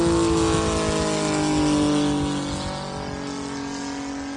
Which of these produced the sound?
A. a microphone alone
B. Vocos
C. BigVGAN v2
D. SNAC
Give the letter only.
A